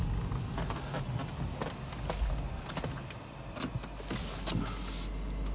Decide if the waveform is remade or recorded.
recorded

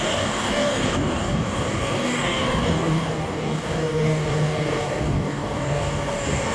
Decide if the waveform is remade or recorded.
remade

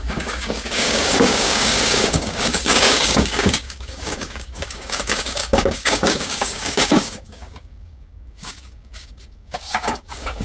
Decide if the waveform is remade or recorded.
remade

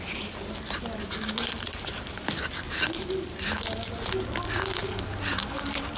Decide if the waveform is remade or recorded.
recorded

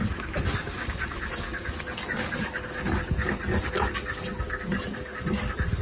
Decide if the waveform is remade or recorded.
remade